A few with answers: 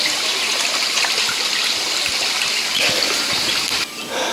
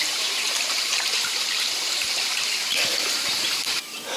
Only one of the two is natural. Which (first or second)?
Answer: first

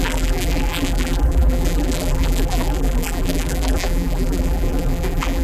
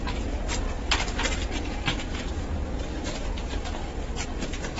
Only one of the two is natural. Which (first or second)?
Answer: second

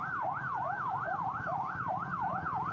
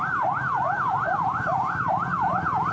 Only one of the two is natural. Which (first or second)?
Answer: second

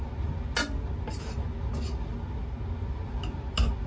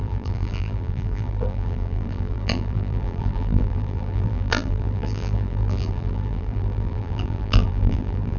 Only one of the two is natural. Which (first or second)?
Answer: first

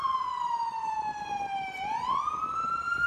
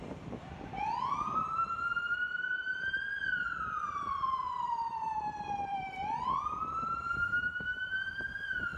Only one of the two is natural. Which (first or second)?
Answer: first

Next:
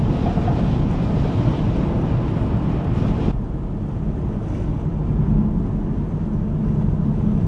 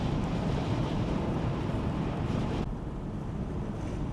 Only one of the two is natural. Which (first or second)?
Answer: first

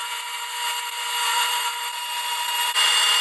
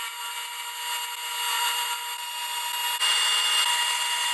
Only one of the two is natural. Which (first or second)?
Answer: second